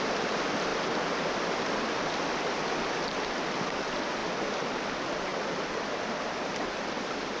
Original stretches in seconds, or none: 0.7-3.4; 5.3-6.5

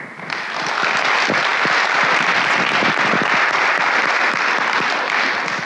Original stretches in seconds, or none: 0.0-5.7

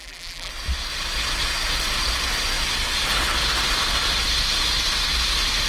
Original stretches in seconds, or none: 0.5-5.7